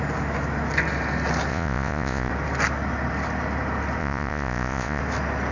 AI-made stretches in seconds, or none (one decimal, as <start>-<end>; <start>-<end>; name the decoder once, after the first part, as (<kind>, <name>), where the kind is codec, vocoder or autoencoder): 1.5-2.3 (vocoder, Vocos); 4.0-5.0